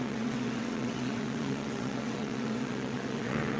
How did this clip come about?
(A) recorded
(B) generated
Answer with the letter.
B